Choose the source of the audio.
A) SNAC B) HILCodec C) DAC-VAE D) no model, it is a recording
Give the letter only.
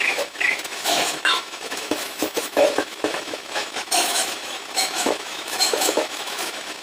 C